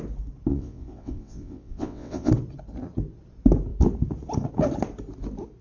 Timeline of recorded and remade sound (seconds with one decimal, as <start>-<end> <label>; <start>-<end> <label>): 0.0-0.5 recorded; 0.5-2.3 remade; 2.3-5.6 recorded